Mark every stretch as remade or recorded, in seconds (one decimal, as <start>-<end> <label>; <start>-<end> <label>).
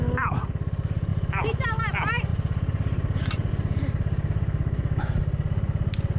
0.0-1.1 recorded; 1.1-1.8 remade; 1.8-2.3 recorded; 2.3-3.5 remade; 3.5-6.2 recorded